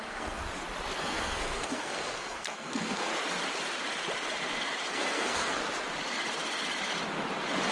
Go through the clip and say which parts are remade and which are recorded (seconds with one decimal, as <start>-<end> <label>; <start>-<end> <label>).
0.0-0.4 remade; 0.4-1.0 recorded; 1.0-3.1 remade; 3.1-4.9 recorded; 4.9-5.6 remade; 5.6-7.7 recorded